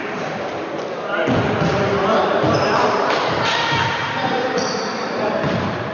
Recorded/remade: remade